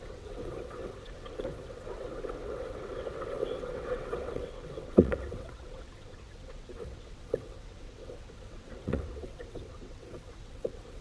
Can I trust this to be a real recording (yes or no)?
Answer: no